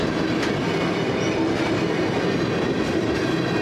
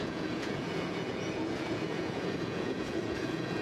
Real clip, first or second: first